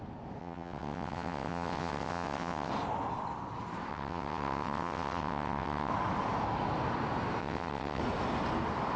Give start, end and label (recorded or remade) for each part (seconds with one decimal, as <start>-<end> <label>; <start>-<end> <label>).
0.0-0.4 recorded; 0.4-2.7 remade; 2.7-3.9 recorded; 3.9-5.9 remade; 5.9-7.4 recorded; 7.4-8.0 remade; 8.0-9.0 recorded